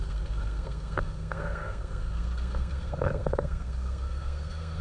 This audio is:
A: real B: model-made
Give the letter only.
B